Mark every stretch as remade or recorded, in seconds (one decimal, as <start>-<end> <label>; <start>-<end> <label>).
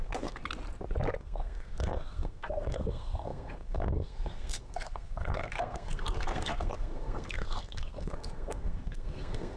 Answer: 0.0-0.4 remade; 0.4-1.2 recorded; 1.2-9.6 remade